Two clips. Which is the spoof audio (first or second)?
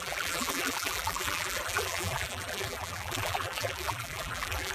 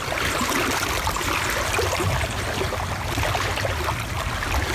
first